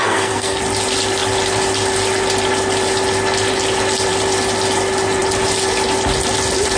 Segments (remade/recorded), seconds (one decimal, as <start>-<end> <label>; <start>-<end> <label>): 0.0-0.6 remade; 0.6-6.8 recorded